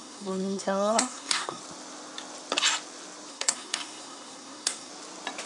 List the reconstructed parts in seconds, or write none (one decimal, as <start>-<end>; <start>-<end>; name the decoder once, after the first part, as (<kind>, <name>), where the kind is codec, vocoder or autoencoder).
0.0-1.6 (codec, SNAC); 3.3-4.9

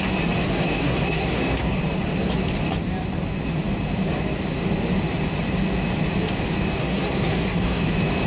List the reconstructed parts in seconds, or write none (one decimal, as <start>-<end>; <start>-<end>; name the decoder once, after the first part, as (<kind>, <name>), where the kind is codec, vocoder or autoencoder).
0.5-1.8 (codec, SNAC); 6.8-7.8

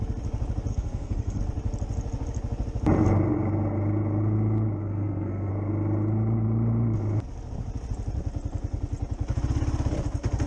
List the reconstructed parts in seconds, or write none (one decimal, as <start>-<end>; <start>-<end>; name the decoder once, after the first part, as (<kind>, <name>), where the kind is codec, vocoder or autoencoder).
0.7-1.4 (codec, SNAC); 4.8-5.5

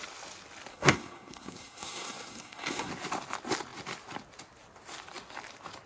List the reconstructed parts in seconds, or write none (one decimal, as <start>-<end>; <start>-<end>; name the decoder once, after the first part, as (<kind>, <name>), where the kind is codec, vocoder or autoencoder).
0.7-2.9 (codec, SNAC)